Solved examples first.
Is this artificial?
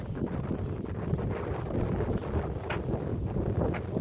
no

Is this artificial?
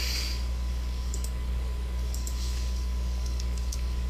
yes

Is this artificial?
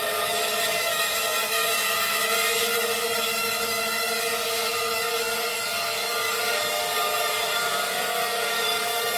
yes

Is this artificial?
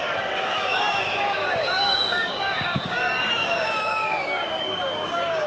yes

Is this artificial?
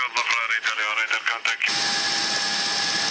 no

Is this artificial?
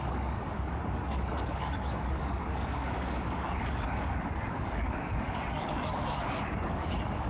yes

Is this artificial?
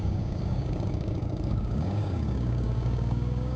yes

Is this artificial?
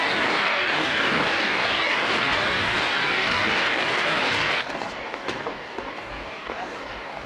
yes